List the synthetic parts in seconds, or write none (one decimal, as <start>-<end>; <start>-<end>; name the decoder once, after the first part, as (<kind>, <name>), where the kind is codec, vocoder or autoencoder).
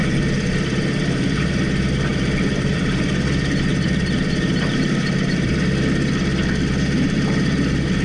0.0-1.6 (vocoder, BigVGAN v2); 2.1-3.1; 3.7-5.5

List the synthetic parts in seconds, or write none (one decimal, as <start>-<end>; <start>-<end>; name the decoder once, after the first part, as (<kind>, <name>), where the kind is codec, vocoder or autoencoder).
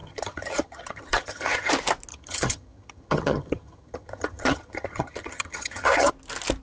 0.0-1.7 (vocoder, HiFi-GAN); 2.1-6.1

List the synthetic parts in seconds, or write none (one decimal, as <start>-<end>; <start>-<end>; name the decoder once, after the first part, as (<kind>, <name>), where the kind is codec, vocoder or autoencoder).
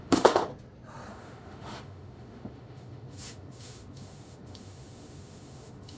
0.0-0.5 (autoencoder, DAC-VAE); 1.1-6.0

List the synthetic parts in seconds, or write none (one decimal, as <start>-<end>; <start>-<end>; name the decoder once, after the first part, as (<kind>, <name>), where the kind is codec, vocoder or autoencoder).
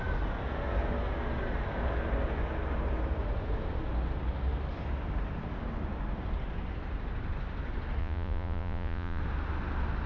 8.0-9.2 (vocoder, Vocos)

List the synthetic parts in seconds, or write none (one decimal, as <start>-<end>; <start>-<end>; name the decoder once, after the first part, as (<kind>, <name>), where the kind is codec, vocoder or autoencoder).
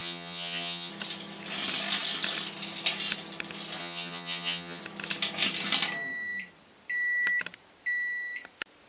0.0-0.9 (vocoder, HiFi-GAN); 3.8-4.8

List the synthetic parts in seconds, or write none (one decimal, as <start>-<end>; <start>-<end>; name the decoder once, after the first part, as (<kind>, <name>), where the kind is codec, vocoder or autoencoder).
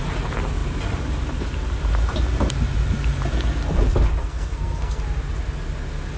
4.2-5.0 (codec, SNAC)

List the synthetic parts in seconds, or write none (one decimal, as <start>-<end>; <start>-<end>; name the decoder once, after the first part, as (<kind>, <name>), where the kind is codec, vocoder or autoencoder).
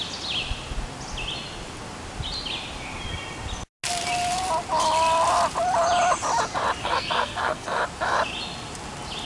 6.8-7.8 (codec, SNAC)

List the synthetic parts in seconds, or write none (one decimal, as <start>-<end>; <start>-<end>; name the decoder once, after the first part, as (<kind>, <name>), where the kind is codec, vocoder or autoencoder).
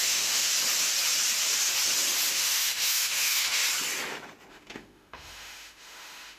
0.0-0.5 (autoencoder, DAC-VAE); 2.3-3.6; 4.5-6.4